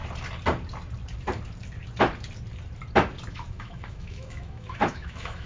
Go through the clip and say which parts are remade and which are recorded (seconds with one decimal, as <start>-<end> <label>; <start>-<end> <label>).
0.0-3.3 recorded; 3.3-5.5 remade

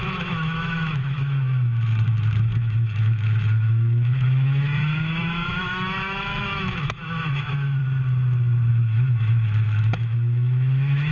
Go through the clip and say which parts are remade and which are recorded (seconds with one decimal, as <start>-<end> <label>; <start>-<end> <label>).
0.0-7.8 remade; 7.8-8.7 recorded; 8.7-11.1 remade

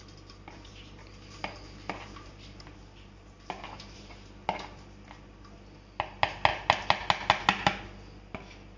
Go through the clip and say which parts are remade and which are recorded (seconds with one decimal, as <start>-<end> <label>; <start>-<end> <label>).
0.0-8.8 recorded

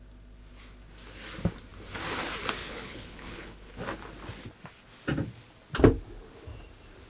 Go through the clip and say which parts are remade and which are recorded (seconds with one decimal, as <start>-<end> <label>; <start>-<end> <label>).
0.0-2.6 recorded; 2.6-3.7 remade; 3.7-7.1 recorded

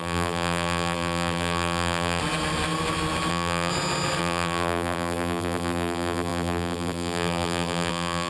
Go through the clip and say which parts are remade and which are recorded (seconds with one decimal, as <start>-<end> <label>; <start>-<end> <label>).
0.0-2.2 remade; 2.2-3.3 recorded; 3.3-3.7 remade; 3.7-4.2 recorded; 4.2-8.3 remade

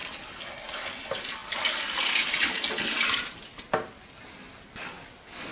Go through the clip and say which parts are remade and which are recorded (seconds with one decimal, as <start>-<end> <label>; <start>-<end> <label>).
0.0-5.5 recorded